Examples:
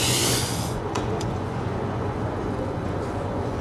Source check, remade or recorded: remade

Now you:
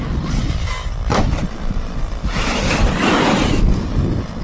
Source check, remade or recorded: recorded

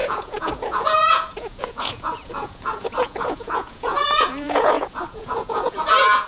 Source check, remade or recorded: remade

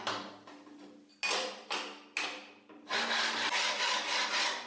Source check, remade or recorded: recorded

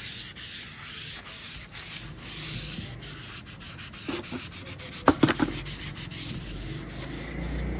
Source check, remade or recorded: recorded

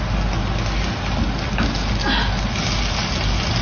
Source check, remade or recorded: recorded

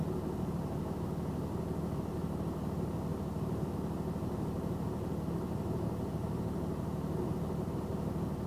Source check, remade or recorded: recorded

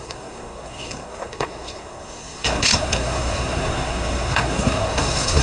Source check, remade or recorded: remade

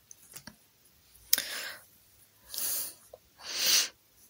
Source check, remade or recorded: recorded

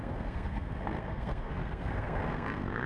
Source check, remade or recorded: remade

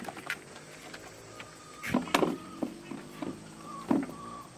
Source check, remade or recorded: recorded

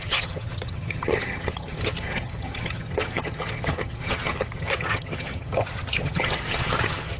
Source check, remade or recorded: remade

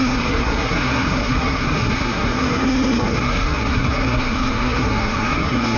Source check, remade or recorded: remade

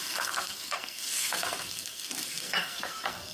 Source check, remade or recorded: remade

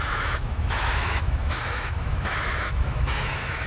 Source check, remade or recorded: remade